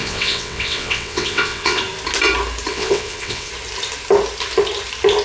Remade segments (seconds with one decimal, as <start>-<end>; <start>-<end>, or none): 0.0-1.8; 2.7-3.5